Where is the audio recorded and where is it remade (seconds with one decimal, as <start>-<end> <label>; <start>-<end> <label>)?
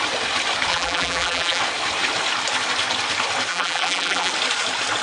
0.0-0.7 recorded; 0.7-1.6 remade; 1.6-3.5 recorded; 3.5-4.3 remade; 4.3-5.0 recorded